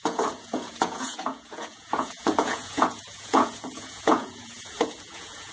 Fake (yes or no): yes